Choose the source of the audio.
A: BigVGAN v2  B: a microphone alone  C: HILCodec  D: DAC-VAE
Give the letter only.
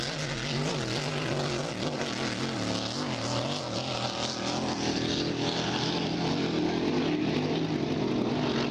B